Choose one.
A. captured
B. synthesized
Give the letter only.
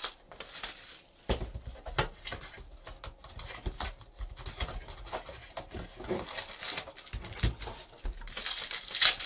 A